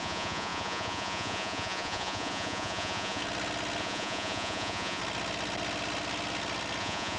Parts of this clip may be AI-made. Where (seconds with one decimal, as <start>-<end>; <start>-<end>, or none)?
0.0-3.2; 3.8-5.0; 6.8-7.2